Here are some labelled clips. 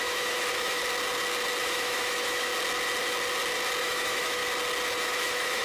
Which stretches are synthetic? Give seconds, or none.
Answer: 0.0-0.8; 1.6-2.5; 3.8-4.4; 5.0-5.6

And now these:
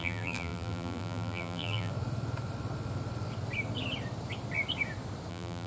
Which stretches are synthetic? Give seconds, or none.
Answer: 0.0-1.9; 5.3-5.7

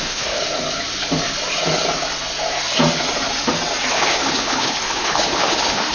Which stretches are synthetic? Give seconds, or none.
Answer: 0.0-0.4; 3.9-5.9

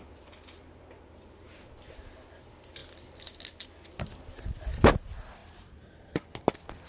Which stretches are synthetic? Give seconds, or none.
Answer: 5.4-6.2

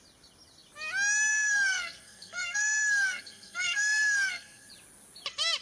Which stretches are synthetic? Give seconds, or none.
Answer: 1.3-4.7